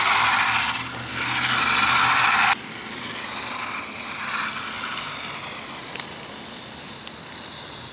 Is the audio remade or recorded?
recorded